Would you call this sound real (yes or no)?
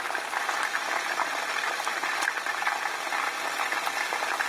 yes